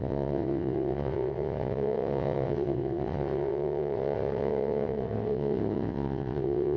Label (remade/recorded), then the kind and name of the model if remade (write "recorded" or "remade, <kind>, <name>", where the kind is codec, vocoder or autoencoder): remade, vocoder, WaveNeXt